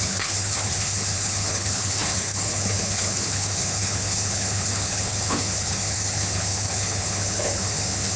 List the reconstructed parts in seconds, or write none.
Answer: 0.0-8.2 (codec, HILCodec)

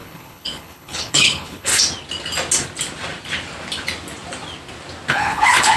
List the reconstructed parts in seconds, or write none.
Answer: 0.0-1.7 (codec, HILCodec); 5.1-5.8

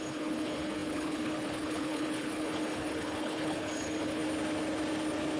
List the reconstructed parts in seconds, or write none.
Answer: 0.0-4.2 (codec, HILCodec)

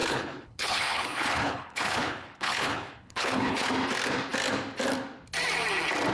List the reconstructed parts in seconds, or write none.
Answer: 0.0-3.7 (codec, HILCodec)

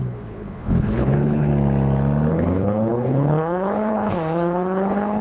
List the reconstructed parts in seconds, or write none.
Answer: 0.0-1.5 (codec, HILCodec); 2.3-5.2

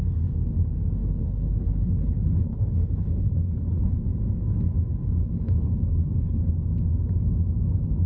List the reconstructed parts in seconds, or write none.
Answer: 1.2-4.0 (codec, HILCodec); 5.2-6.5